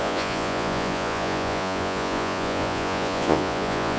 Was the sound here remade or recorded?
remade